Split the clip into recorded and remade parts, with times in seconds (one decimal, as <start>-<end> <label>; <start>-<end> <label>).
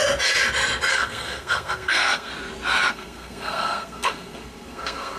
0.0-0.9 recorded; 0.9-2.3 remade; 2.3-2.9 recorded; 2.9-5.2 remade